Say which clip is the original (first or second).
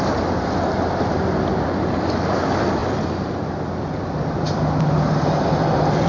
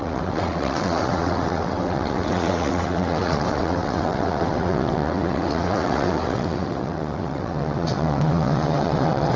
first